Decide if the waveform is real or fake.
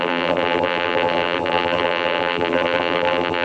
fake